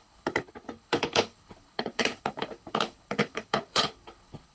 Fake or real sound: fake